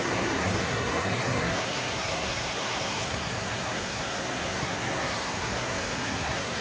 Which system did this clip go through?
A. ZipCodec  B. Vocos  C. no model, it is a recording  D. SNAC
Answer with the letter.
D